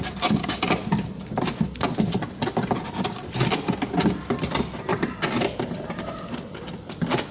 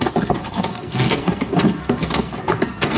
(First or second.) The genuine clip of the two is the first